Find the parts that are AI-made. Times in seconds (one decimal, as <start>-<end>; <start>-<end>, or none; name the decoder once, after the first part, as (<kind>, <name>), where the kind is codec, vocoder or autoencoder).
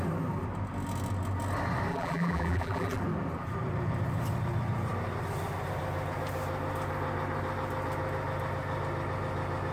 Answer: 1.9-3.0 (vocoder, BigVGAN v2)